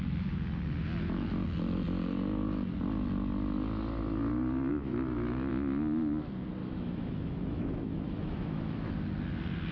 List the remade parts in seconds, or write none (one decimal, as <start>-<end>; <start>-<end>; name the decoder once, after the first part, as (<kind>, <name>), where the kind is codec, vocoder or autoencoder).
4.7-5.5 (autoencoder, DAC-VAE); 6.6-8.9

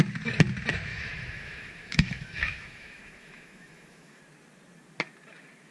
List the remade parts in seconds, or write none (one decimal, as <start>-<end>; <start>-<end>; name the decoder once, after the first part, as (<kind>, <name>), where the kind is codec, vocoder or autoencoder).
0.9-4.2 (autoencoder, DAC-VAE)

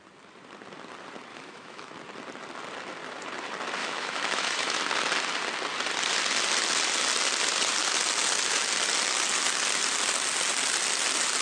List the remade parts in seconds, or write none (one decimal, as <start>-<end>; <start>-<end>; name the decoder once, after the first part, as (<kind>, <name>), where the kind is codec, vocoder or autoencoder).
1.3-1.9 (autoencoder, DAC-VAE); 3.8-4.8

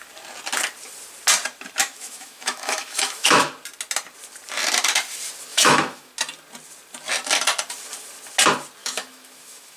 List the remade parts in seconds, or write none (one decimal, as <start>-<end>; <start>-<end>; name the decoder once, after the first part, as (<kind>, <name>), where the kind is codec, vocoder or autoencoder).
1.8-3.5 (autoencoder, DAC-VAE); 5.5-6.1; 8.8-9.8